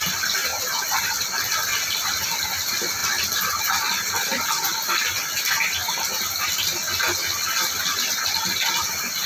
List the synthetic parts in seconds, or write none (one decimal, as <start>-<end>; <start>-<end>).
none